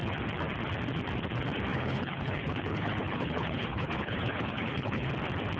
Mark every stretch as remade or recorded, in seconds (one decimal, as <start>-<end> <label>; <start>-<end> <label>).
0.0-1.7 recorded; 1.7-5.1 remade; 5.1-5.6 recorded